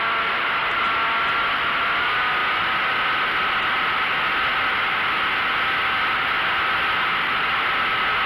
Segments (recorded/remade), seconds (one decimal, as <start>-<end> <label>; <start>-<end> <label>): 0.0-8.3 recorded